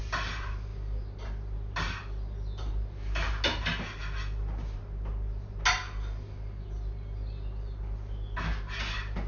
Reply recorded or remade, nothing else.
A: recorded